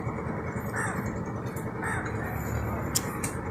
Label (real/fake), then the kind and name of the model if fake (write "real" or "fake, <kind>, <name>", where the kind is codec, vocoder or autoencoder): real